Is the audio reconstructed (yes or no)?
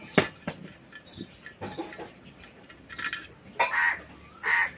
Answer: no